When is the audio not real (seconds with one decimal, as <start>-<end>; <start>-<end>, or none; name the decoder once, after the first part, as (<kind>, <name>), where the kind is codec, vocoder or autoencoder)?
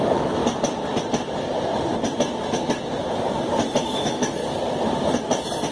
0.0-0.4 (autoencoder, DAC-VAE); 3.8-4.4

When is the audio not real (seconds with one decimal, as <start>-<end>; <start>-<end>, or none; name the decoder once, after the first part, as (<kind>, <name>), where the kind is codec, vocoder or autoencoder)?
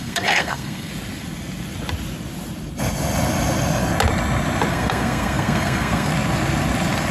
0.0-0.9 (codec, SNAC); 4.7-6.1